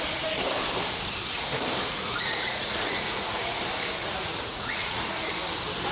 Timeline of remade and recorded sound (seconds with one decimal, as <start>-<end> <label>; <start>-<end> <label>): 0.0-1.9 recorded; 1.9-3.6 remade; 3.6-4.0 recorded; 4.0-5.3 remade; 5.3-5.9 recorded